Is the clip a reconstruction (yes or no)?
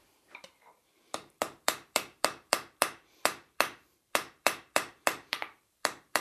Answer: yes